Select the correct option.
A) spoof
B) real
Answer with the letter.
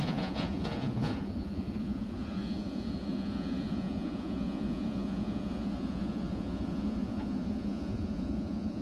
A